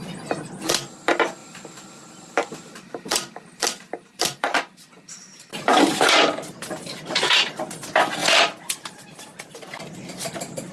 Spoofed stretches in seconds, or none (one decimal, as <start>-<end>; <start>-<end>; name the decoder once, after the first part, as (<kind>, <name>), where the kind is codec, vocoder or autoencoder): 1.4-5.8 (vocoder, BigVGAN v2); 8.2-9.7